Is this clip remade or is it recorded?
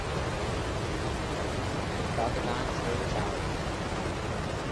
recorded